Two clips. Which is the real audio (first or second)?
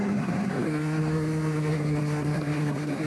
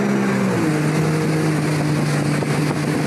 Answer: second